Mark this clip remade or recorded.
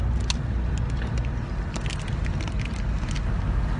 recorded